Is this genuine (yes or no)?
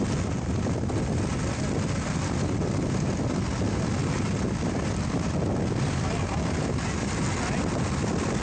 yes